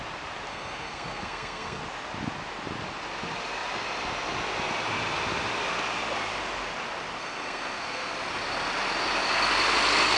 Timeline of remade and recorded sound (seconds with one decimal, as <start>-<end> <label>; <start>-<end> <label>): 0.0-0.5 recorded; 0.5-1.8 remade; 1.8-7.2 recorded; 7.2-8.1 remade; 8.1-10.2 recorded